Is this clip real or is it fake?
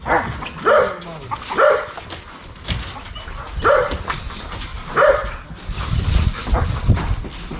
real